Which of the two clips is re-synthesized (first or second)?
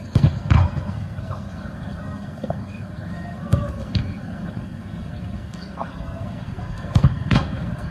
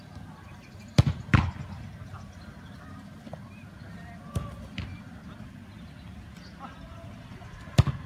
first